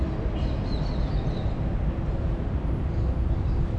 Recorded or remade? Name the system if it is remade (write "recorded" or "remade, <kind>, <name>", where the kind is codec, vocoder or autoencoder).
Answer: recorded